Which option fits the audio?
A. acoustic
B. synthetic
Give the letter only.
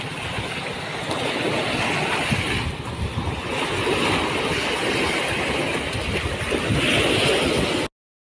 A